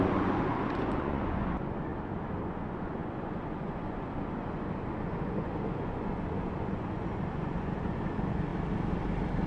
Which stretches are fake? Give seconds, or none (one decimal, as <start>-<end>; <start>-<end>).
0.0-1.9; 2.4-8.5